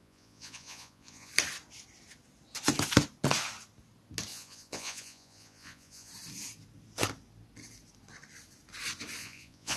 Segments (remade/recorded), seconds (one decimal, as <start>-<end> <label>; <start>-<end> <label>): 0.0-1.3 remade; 1.3-4.3 recorded; 4.3-6.1 remade; 6.1-9.2 recorded; 9.2-9.8 remade